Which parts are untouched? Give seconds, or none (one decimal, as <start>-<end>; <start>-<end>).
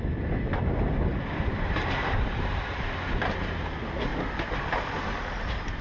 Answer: 0.0-1.1; 3.2-4.1; 4.7-5.8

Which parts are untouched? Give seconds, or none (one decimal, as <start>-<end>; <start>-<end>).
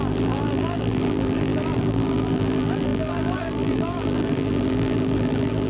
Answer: none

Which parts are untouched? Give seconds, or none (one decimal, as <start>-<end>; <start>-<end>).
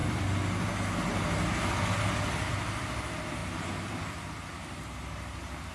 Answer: 0.0-3.4; 4.7-5.7